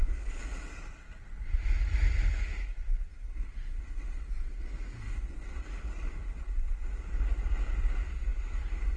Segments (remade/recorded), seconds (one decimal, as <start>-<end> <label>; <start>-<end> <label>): 0.0-2.7 recorded; 2.7-3.8 remade; 3.8-9.0 recorded